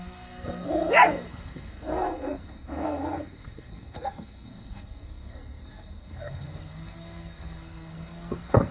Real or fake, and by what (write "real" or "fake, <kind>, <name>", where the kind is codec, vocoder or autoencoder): fake, codec, SNAC